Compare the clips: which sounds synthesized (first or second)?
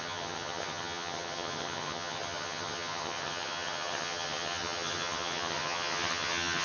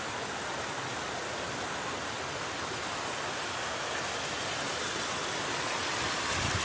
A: first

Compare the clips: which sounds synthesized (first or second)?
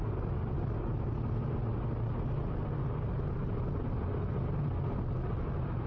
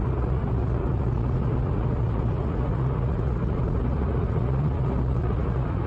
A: second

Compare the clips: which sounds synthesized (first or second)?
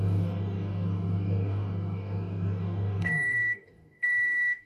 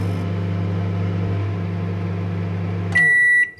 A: first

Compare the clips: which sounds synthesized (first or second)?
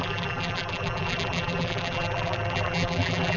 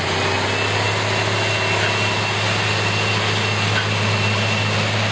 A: first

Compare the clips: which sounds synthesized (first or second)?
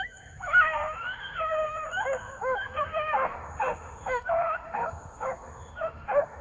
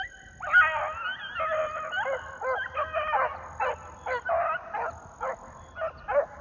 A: first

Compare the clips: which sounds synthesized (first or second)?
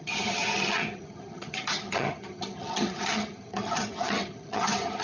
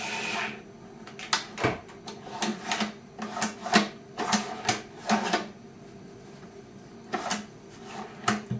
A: first